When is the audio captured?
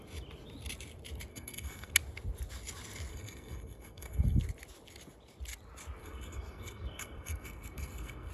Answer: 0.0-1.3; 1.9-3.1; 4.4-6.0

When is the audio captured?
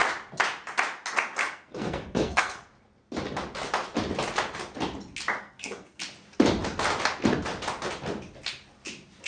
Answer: 0.0-1.4; 2.7-5.4; 6.0-9.3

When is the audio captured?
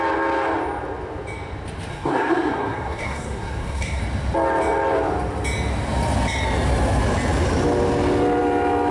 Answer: 0.0-1.9; 4.0-8.9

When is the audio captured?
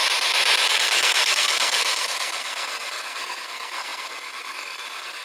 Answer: 0.0-0.7